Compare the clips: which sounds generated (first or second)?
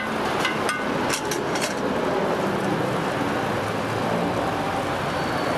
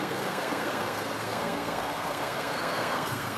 second